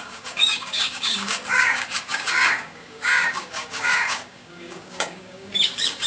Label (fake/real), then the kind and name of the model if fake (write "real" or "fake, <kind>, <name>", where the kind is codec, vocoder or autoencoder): fake, codec, DAC